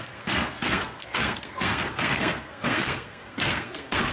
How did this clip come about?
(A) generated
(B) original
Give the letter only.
A